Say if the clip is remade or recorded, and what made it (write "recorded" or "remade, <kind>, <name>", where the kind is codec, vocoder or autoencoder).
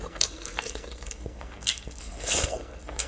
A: remade, codec, SNAC